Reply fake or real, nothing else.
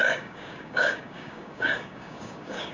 fake